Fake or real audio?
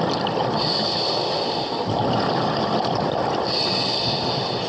real